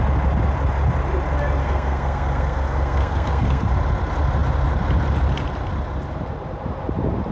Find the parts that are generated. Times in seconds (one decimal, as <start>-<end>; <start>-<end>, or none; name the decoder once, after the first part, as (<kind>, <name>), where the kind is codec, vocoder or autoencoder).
1.6-3.7 (codec, SNAC)